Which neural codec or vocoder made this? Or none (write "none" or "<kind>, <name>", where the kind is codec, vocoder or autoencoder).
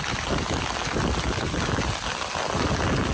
none